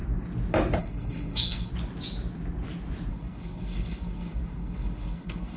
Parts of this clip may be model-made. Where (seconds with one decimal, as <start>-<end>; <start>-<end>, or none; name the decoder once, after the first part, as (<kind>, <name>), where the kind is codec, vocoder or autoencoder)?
0.8-1.7 (codec, SNAC); 3.1-5.6